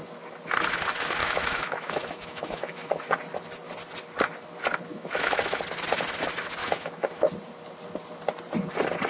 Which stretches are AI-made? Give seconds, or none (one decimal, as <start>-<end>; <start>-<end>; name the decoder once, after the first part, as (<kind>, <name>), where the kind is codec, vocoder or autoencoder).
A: 1.2-2.9 (autoencoder, DAC-VAE); 4.9-5.6; 6.6-7.3